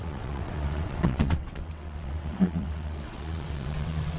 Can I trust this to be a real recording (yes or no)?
no